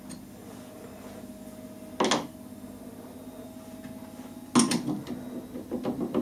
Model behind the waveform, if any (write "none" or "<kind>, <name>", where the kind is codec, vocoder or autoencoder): none